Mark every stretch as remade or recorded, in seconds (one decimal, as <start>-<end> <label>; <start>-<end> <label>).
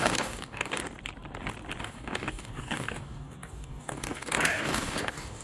0.0-0.8 remade; 0.8-1.8 recorded; 1.8-5.4 remade